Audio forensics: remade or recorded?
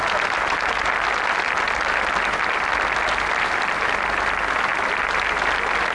recorded